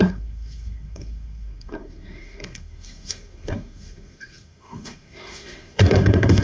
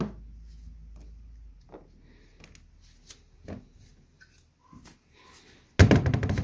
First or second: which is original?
second